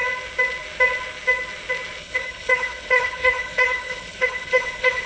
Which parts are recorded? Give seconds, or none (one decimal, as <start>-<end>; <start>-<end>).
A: 0.0-2.0